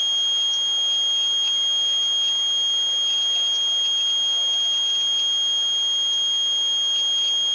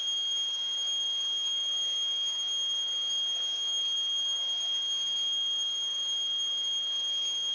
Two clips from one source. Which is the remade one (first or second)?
second